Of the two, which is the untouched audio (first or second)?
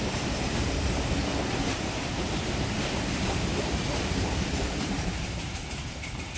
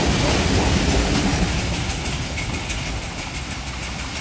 second